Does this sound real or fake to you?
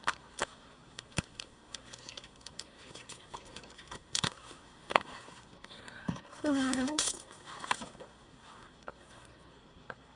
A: fake